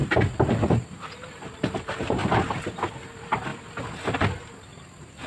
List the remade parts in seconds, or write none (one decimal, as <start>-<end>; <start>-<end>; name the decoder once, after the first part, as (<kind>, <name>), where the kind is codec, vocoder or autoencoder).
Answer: 1.3-2.2 (vocoder, BigVGAN v2); 2.9-3.5